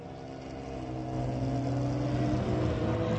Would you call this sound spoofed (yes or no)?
no